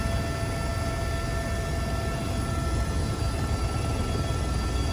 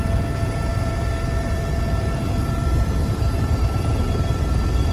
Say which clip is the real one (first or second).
first